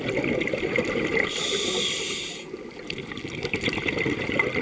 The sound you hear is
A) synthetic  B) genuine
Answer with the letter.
B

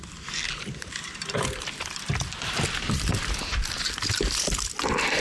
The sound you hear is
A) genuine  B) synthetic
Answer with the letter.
B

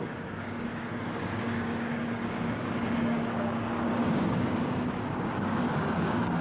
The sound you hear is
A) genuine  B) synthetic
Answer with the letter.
B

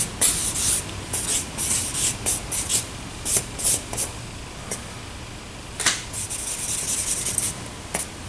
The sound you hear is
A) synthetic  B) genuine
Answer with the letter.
B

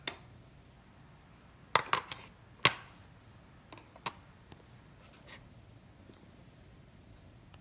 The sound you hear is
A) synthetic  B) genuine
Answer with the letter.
B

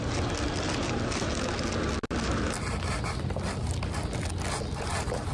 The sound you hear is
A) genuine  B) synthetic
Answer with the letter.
A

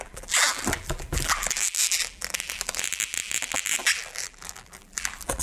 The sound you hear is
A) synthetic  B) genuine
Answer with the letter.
A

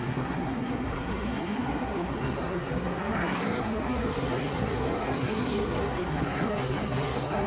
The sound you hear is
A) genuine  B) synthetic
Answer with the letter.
B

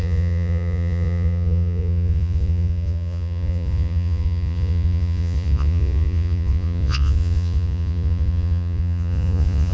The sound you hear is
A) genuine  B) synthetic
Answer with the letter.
B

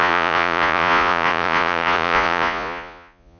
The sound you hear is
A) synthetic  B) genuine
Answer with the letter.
A